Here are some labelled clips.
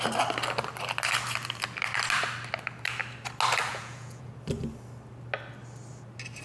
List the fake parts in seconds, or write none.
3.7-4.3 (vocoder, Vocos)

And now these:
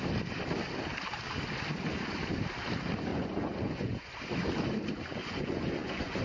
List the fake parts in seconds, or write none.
3.1-4.1 (vocoder, Vocos); 5.2-6.2

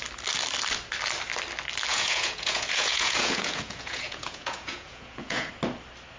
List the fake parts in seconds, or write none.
1.9-5.5 (vocoder, Vocos)

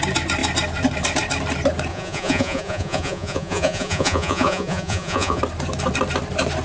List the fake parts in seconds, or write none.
1.9-5.4 (vocoder, Vocos)

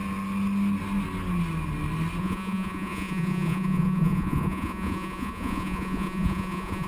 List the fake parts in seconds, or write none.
2.2-6.9 (vocoder, Vocos)

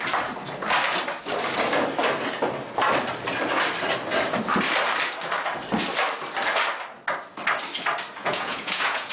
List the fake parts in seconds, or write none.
8.2-9.1 (vocoder, Vocos)

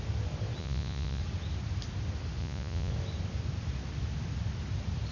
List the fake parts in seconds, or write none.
0.6-1.2 (vocoder, Vocos); 2.4-2.9